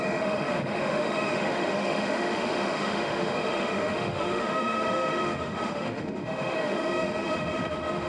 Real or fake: fake